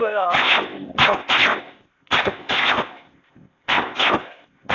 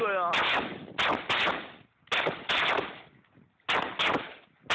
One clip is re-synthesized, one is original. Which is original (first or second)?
second